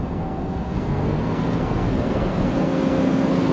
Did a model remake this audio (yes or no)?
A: yes